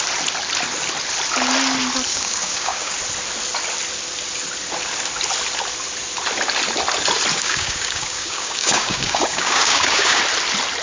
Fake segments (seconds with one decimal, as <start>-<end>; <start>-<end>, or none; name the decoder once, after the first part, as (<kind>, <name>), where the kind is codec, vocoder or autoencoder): 2.1-2.9 (codec, DAC); 7.3-10.2